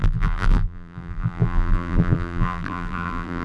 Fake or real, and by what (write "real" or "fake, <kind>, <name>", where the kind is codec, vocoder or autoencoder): fake, vocoder, BigVGAN v2